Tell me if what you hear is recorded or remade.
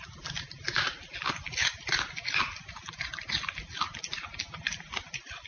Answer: recorded